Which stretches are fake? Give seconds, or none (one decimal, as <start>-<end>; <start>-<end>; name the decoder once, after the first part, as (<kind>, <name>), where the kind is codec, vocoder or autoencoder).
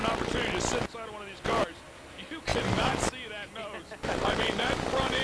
none